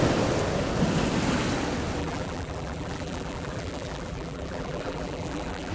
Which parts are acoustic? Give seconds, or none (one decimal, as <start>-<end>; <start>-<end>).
0.0-2.0